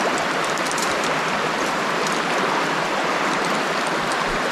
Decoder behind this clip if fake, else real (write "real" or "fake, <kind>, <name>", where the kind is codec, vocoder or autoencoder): real